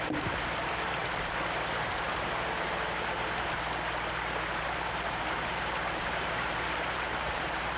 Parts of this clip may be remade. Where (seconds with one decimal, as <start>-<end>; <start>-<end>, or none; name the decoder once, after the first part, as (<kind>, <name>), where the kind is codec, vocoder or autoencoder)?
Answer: 0.0-1.0 (vocoder, BigVGAN v2); 4.5-7.8